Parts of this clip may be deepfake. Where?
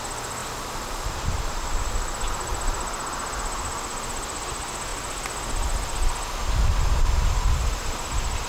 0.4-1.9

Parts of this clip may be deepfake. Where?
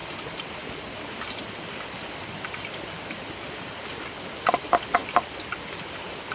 0.0-3.5; 5.0-6.3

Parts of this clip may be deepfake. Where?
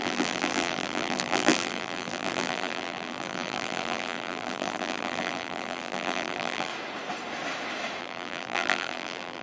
0.0-6.7; 8.0-9.4